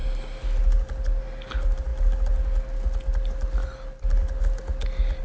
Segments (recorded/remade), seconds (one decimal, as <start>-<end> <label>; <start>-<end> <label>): 0.0-5.2 recorded